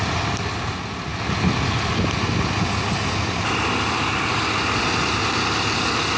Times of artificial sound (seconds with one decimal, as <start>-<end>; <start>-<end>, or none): none